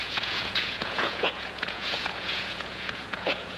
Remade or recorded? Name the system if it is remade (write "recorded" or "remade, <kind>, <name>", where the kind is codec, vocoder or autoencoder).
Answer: remade, vocoder, Vocos